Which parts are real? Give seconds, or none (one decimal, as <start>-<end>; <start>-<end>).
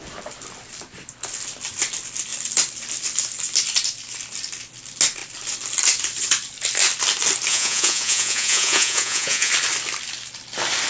0.0-7.5; 9.5-10.9